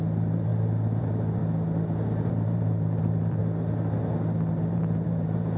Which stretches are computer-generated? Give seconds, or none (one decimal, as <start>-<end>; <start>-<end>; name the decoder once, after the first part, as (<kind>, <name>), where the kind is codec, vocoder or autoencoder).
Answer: 0.0-0.5 (vocoder, BigVGAN v2); 1.0-1.4; 2.3-3.4; 4.7-5.6

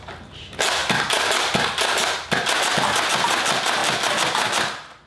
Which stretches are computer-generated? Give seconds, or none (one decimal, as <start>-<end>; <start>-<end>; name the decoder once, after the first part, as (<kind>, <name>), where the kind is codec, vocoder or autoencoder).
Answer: 0.0-3.8 (vocoder, BigVGAN v2)